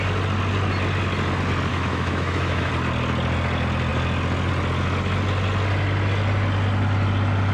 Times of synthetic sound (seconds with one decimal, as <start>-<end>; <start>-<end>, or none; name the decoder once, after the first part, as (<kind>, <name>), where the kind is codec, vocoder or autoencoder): 1.7-2.7 (autoencoder, DAC-VAE)